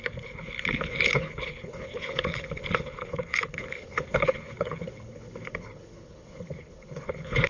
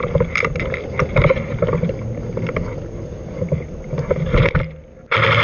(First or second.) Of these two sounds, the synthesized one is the first